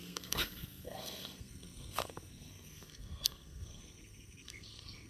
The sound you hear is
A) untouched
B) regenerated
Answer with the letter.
B